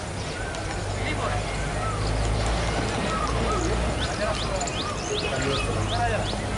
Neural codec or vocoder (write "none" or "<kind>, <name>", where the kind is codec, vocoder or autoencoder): none